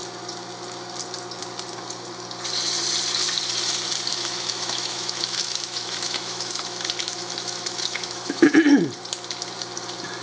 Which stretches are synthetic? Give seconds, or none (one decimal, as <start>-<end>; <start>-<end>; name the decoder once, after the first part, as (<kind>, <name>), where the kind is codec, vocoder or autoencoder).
4.1-8.5 (autoencoder, DAC-VAE)